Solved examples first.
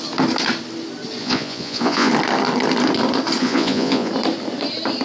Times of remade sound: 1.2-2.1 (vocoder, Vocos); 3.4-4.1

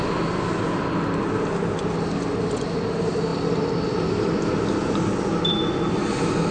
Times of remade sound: none

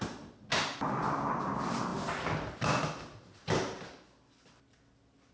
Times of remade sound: none

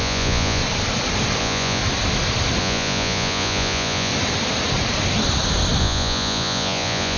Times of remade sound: 0.0-0.6 (vocoder, Vocos); 1.4-1.8; 2.6-4.1; 5.8-7.2

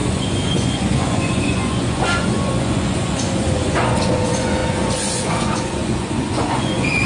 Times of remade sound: 0.0-7.1 (vocoder, Vocos)

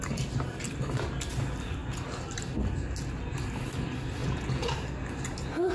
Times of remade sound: 4.2-4.7 (vocoder, Vocos)

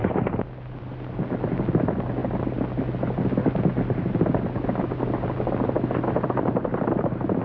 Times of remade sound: none